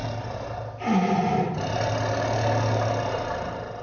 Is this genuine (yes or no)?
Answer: yes